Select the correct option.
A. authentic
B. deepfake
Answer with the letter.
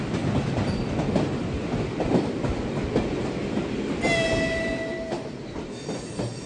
A